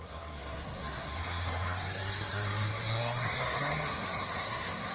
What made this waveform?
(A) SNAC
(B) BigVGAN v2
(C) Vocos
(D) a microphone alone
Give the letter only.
A